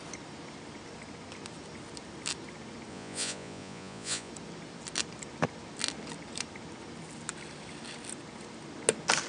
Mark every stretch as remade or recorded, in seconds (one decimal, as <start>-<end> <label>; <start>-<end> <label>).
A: 0.0-2.9 recorded; 2.9-4.3 remade; 4.3-9.3 recorded